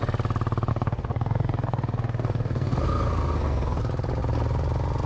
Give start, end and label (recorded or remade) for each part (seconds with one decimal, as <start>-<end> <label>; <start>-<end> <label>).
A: 0.0-0.7 recorded; 0.7-3.8 remade; 3.8-5.1 recorded